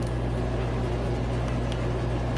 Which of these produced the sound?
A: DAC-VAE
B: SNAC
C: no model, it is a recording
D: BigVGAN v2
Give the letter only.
C